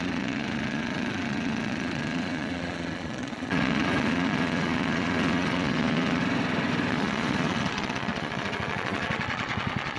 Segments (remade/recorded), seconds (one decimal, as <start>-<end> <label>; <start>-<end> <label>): 0.0-6.2 remade; 6.2-6.9 recorded; 6.9-10.0 remade